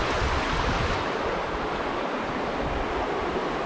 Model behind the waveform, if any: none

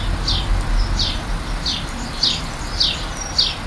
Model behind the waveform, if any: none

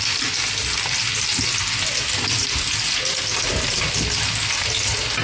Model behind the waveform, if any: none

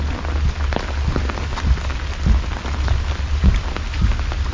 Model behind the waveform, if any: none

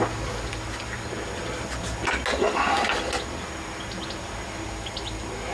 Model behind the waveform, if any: none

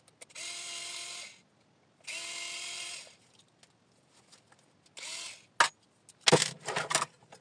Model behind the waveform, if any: none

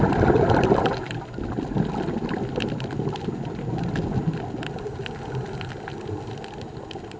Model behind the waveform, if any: none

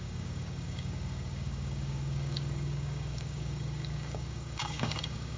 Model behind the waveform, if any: codec, DAC